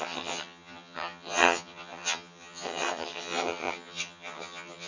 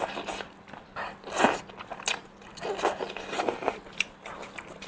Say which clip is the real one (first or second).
second